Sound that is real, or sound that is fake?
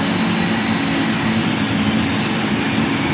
real